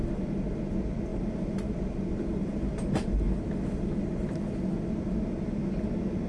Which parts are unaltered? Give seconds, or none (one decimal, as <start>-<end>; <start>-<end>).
0.0-1.1; 1.8-2.4; 3.1-6.3